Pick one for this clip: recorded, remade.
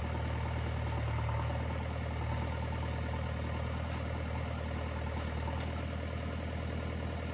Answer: recorded